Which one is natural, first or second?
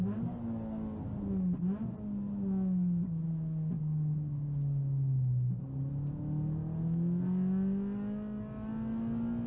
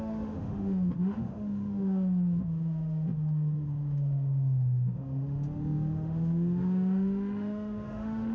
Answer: first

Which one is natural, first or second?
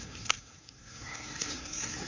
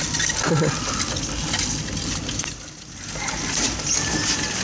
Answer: second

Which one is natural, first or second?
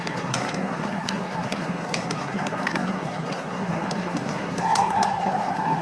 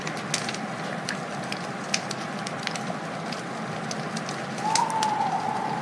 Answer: second